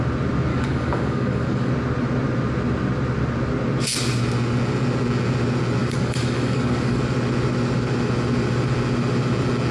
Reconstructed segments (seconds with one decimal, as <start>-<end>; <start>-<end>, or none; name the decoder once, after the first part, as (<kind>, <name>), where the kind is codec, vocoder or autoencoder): 0.5-1.7 (codec, DAC); 5.8-7.0